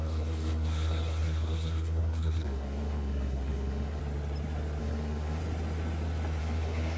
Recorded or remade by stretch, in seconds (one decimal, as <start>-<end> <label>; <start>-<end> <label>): 0.0-4.0 remade; 4.0-4.8 recorded; 4.8-5.4 remade; 5.4-6.4 recorded; 6.4-7.0 remade